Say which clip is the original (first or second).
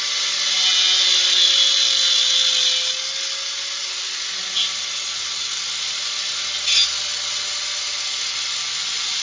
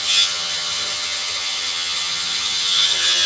first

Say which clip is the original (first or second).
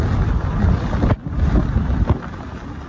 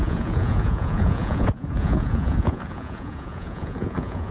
first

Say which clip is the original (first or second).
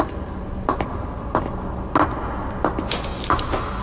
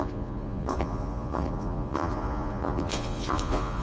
first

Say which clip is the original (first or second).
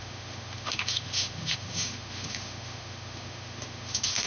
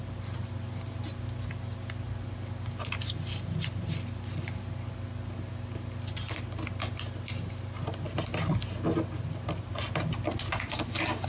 second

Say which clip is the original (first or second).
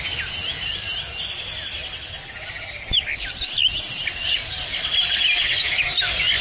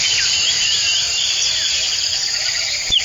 first